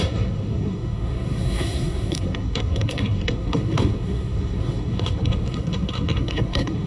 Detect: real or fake fake